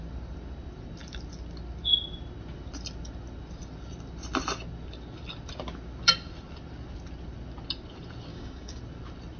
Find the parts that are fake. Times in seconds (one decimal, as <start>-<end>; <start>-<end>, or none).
8.3-8.8

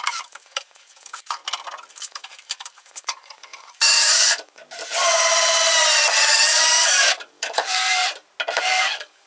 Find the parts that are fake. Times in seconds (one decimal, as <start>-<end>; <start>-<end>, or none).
0.0-1.4; 1.9-4.6; 6.2-8.0; 8.6-9.3

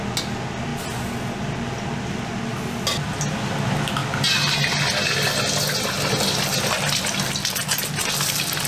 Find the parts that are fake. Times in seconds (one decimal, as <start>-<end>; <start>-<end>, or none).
none

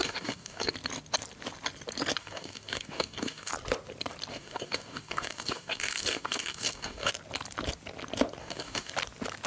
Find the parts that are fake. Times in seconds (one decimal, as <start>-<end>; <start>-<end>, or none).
0.0-0.7; 2.2-3.5; 4.3-7.1; 8.4-8.9

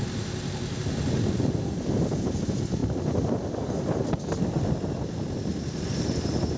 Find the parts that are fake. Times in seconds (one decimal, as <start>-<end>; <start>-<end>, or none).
none